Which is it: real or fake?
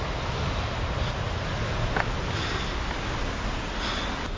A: real